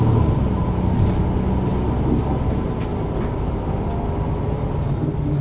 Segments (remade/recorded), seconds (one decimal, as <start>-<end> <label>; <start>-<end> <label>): 0.0-5.4 recorded